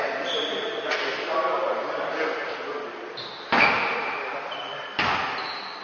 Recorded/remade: recorded